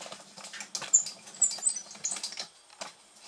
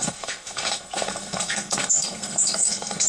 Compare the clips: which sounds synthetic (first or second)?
second